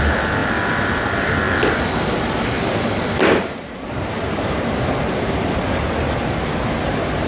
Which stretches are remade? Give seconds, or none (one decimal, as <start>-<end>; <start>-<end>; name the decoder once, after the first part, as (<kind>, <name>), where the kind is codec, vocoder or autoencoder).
none